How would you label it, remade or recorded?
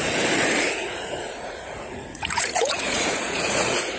remade